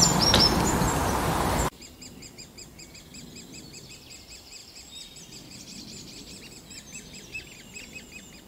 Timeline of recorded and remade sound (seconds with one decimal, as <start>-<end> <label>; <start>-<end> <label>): 0.0-4.6 recorded; 4.6-5.2 remade; 5.2-8.5 recorded